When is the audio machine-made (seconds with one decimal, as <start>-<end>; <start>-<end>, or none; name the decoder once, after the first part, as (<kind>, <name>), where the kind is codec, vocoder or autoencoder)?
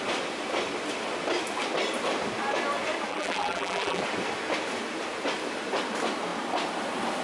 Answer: 3.1-4.0 (vocoder, BigVGAN v2)